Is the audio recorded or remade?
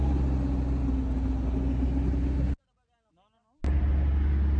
recorded